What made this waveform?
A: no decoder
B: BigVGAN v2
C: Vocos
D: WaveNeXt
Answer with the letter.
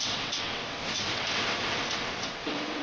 D